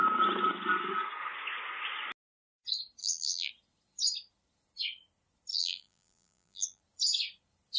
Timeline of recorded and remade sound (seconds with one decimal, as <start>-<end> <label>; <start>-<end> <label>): 0.0-3.0 recorded; 3.0-3.5 remade; 3.5-5.5 recorded; 5.5-6.8 remade; 6.8-7.8 recorded